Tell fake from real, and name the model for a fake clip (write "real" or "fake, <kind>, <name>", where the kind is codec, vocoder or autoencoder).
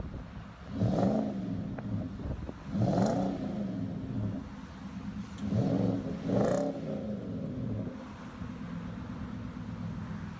real